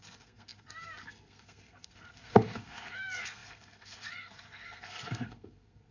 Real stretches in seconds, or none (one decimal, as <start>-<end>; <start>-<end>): none